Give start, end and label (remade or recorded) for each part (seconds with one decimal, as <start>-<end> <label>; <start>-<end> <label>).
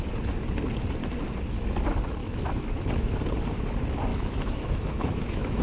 0.0-2.2 recorded; 2.2-3.2 remade; 3.2-4.1 recorded; 4.1-5.6 remade